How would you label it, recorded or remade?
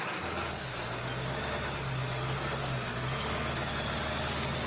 recorded